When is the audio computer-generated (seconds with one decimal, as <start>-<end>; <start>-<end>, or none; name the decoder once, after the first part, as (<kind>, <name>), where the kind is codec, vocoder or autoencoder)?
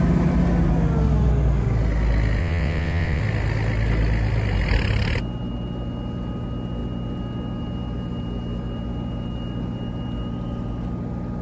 2.4-3.2 (vocoder, WaveNeXt)